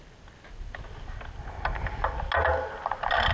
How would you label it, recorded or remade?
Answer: recorded